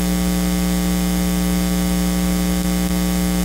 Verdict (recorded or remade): recorded